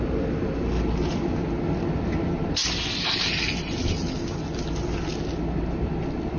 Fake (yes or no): no